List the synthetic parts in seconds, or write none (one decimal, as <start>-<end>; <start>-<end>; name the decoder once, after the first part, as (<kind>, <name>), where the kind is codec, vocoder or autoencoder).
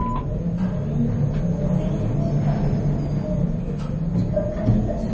none